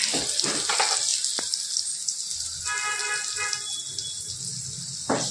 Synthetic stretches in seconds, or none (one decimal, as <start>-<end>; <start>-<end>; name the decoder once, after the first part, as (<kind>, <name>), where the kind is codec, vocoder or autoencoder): none